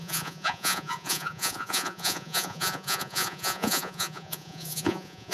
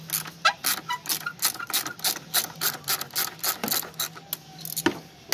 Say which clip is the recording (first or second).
second